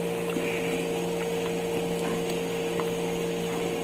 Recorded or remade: recorded